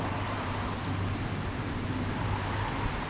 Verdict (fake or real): real